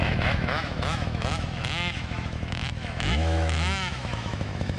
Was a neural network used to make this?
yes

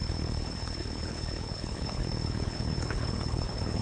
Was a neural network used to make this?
yes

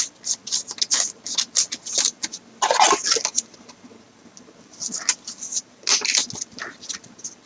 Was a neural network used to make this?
no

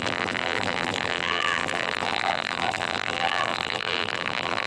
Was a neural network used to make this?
yes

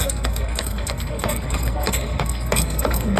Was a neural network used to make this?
yes